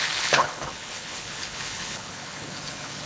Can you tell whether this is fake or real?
fake